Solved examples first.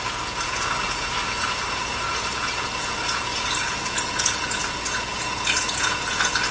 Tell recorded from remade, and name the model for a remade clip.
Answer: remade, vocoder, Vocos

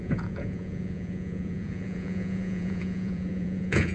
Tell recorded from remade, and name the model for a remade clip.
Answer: remade, vocoder, Vocos